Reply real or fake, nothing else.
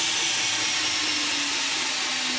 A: real